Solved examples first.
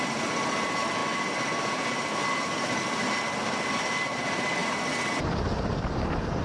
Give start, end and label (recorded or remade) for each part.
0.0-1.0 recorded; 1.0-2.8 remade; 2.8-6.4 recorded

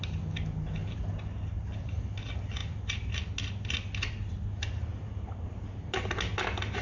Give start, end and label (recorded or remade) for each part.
0.0-0.8 recorded; 0.8-2.0 remade; 2.0-2.6 recorded; 2.6-3.1 remade; 3.1-4.9 recorded; 4.9-6.3 remade; 6.3-6.8 recorded

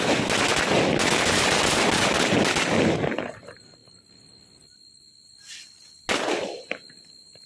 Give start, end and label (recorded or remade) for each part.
0.0-7.5 recorded

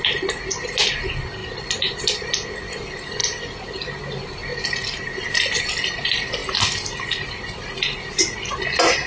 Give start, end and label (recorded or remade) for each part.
0.0-1.4 recorded; 1.4-2.0 remade; 2.0-9.1 recorded

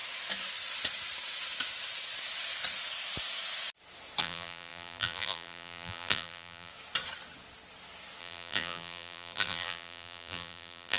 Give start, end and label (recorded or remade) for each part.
0.0-4.2 recorded; 4.2-6.7 remade; 6.7-8.2 recorded; 8.2-11.0 remade

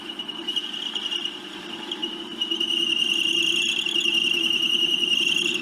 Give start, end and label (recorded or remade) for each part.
0.0-5.6 recorded

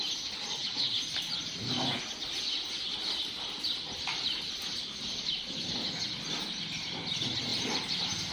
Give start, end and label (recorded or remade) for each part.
0.0-0.6 recorded; 0.6-1.8 remade; 1.8-2.9 recorded; 2.9-5.8 remade; 5.8-7.5 recorded; 7.5-8.3 remade